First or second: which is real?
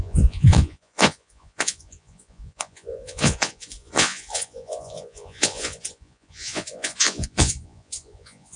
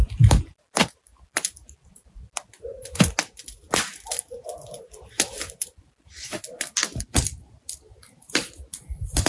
second